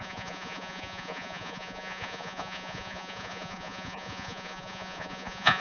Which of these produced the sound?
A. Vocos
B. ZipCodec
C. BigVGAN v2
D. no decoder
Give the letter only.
A